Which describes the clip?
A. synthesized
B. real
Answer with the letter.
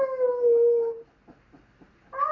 B